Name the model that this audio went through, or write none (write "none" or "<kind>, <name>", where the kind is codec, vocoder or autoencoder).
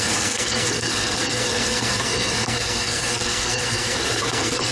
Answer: codec, SNAC